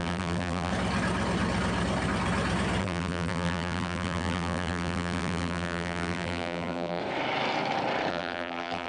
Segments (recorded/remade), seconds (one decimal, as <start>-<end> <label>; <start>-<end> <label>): 0.0-0.7 remade; 0.7-2.8 recorded; 2.8-7.0 remade; 7.0-8.1 recorded; 8.1-8.9 remade